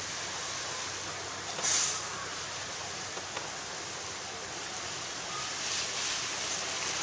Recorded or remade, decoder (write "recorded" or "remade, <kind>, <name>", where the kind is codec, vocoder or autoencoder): recorded